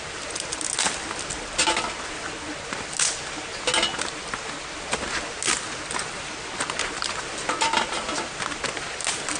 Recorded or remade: recorded